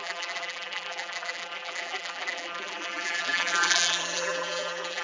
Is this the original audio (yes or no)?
no